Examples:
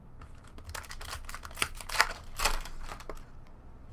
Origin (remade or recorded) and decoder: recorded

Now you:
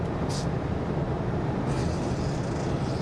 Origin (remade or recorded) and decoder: recorded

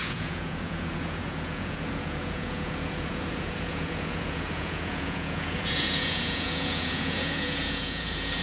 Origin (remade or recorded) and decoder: remade, vocoder, Vocos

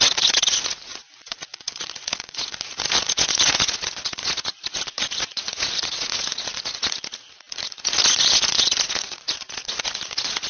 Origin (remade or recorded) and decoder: remade, vocoder, Vocos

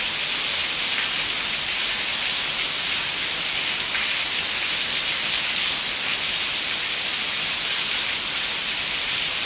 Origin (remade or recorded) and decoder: recorded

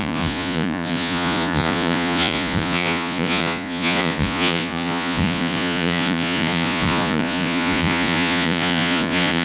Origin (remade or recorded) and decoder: remade, vocoder, Vocos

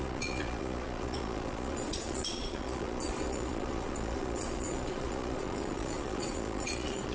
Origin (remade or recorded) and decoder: remade, vocoder, Vocos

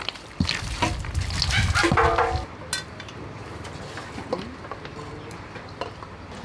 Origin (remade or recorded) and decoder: recorded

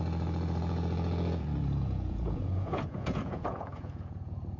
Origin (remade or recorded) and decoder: remade, vocoder, Vocos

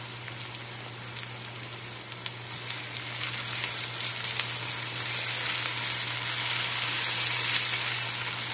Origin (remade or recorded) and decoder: recorded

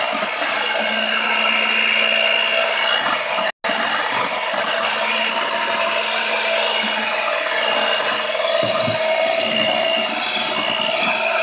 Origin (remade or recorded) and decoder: recorded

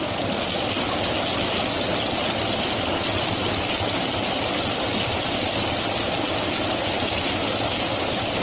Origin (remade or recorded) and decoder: recorded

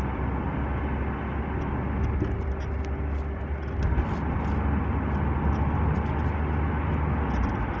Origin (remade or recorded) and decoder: recorded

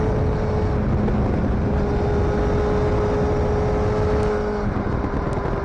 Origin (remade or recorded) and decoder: recorded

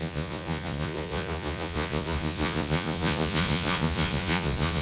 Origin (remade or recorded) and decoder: remade, vocoder, Vocos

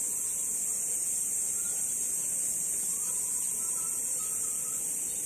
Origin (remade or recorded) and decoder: recorded